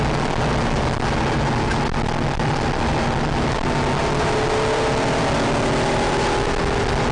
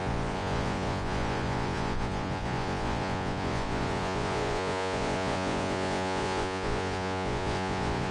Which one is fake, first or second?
second